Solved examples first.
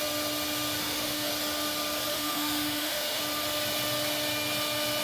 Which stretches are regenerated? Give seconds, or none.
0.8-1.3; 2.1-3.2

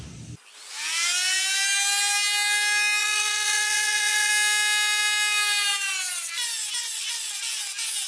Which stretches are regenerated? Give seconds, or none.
3.0-4.3; 6.8-7.4

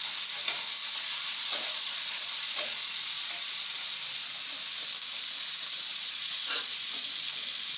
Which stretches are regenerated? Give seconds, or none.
0.8-3.6; 5.7-6.9

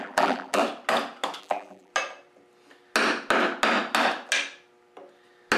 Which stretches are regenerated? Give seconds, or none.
0.0-0.6; 1.4-1.9